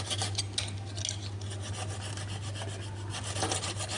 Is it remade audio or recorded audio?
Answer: recorded